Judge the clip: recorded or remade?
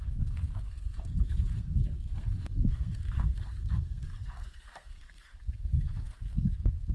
remade